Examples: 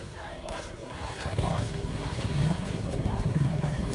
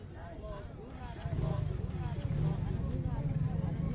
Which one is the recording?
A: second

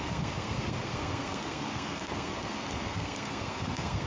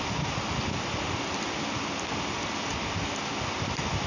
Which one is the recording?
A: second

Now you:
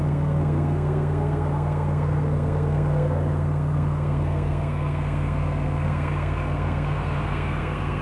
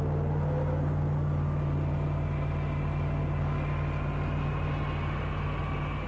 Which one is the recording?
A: second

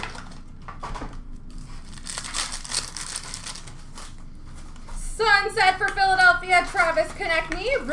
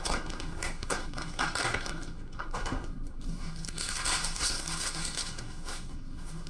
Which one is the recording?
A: first